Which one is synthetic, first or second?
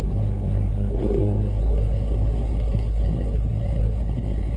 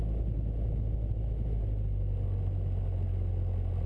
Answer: first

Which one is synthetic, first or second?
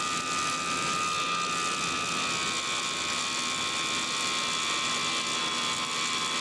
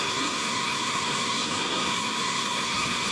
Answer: second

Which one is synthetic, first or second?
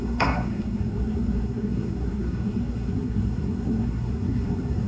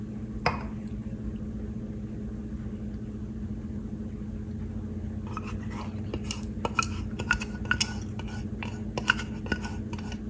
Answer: first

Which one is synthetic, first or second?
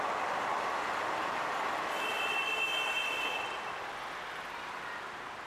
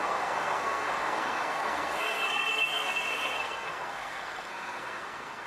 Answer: second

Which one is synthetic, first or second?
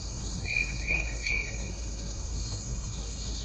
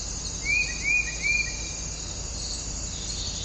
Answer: first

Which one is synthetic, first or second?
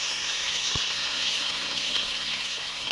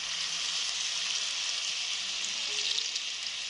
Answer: first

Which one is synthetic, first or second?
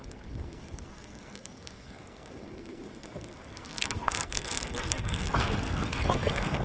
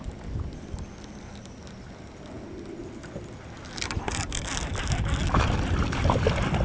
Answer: first